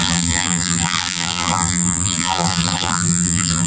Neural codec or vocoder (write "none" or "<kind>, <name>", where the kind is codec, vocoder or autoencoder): vocoder, BigVGAN v2